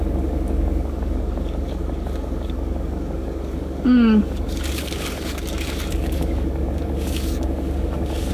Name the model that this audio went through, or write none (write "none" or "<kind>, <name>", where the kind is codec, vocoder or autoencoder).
codec, DAC